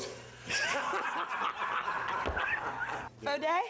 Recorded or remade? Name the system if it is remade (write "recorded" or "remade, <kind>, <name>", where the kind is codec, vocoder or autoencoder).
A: recorded